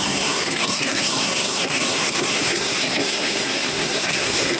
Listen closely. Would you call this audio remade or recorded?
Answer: remade